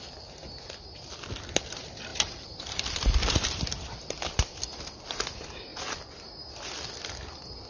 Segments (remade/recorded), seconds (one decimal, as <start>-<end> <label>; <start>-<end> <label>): 0.0-2.1 recorded; 2.1-5.2 remade; 5.2-7.7 recorded